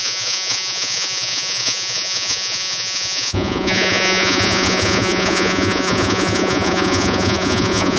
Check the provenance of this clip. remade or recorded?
remade